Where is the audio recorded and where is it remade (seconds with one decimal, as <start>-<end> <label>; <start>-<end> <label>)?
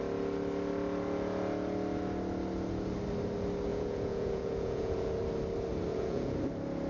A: 0.0-3.7 recorded; 3.7-5.2 remade; 5.2-5.9 recorded; 5.9-6.4 remade; 6.4-6.9 recorded